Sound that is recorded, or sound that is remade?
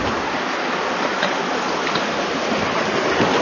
recorded